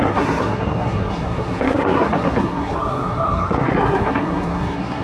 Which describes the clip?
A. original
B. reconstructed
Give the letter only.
B